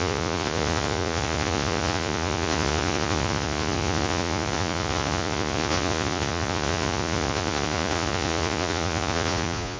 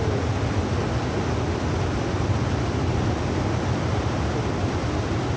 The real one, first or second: second